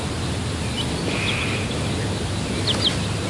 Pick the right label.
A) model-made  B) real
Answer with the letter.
B